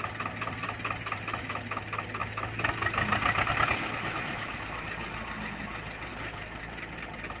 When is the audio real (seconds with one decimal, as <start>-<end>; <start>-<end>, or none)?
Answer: 0.0-7.4

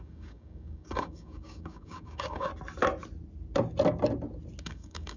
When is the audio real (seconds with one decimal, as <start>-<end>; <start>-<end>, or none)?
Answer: 2.5-4.6

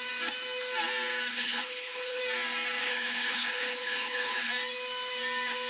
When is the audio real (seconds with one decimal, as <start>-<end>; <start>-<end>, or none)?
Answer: 0.0-1.3; 2.2-2.8; 4.5-5.7

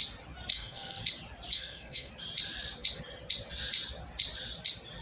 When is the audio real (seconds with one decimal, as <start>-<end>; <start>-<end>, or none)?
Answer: 0.0-0.5; 1.0-1.5; 2.1-5.0

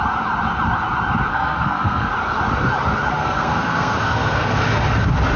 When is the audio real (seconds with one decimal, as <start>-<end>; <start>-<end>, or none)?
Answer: 0.0-1.3; 2.1-3.1; 4.6-5.4

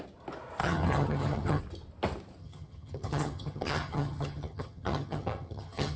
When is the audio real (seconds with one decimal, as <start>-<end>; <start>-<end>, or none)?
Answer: 0.0-0.6; 1.6-2.4